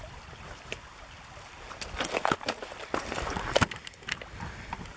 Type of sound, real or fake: real